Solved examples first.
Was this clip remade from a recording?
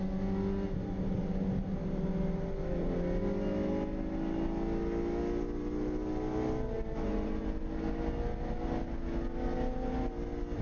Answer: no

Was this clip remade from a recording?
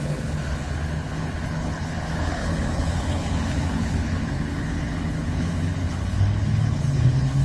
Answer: yes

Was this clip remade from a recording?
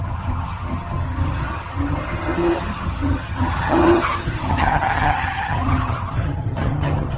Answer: yes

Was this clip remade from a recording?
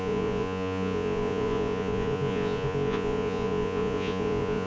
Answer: yes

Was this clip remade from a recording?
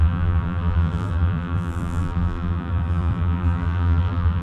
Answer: yes